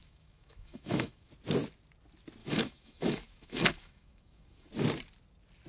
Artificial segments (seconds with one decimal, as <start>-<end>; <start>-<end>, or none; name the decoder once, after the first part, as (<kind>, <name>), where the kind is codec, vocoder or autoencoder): 0.0-1.3 (autoencoder, DAC-VAE); 2.4-4.7

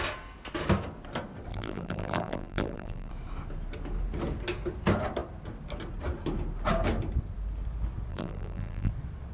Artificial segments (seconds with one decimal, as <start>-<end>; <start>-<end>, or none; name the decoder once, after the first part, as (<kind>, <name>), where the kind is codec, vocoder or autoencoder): 1.5-3.1 (vocoder, BigVGAN v2); 8.1-8.9

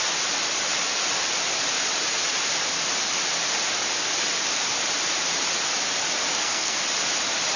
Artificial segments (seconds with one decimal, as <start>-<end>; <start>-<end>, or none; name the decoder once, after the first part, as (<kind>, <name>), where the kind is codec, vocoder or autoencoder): 6.3-6.8 (codec, SNAC)

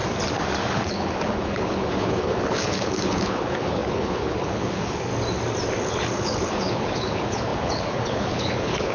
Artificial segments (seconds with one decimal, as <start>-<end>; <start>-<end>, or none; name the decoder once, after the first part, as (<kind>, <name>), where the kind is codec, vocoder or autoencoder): 0.6-5.1 (codec, HILCodec); 5.8-8.9

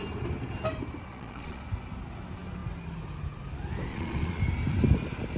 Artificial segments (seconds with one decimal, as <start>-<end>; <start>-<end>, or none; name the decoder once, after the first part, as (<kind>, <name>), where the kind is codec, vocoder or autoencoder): 1.1-1.6 (vocoder, Vocos); 3.9-4.4

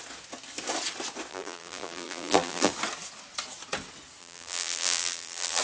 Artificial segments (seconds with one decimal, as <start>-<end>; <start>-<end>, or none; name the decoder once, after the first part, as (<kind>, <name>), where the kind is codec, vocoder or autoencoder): 1.3-2.7 (vocoder, BigVGAN v2); 4.2-5.6

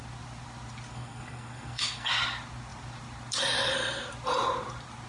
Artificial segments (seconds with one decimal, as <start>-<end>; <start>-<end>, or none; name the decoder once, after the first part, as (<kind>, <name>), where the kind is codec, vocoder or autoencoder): 0.9-2.1 (codec, SNAC)